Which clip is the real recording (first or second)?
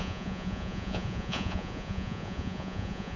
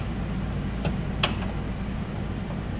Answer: second